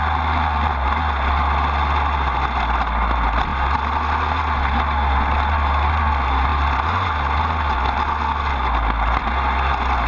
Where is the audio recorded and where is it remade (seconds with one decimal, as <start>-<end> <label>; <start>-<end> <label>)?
0.0-10.1 recorded